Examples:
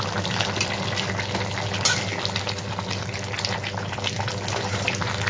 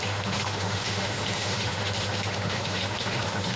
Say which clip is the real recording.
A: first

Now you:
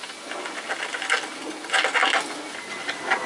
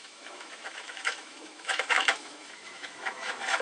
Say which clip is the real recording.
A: first